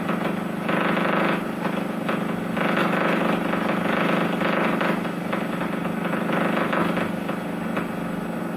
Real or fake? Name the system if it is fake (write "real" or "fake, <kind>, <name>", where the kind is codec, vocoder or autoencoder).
real